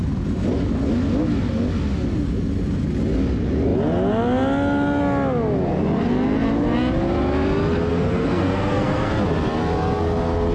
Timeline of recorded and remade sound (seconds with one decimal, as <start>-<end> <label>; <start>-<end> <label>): 0.0-7.9 recorded; 7.9-9.1 remade; 9.1-10.5 recorded